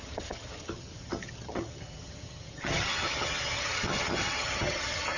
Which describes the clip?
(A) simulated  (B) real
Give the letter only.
A